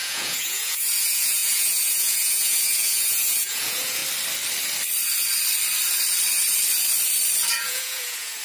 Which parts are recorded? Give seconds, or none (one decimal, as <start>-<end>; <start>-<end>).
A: 4.0-7.6